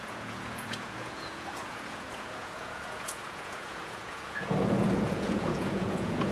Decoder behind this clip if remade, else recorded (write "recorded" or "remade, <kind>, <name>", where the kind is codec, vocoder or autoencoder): remade, vocoder, Vocos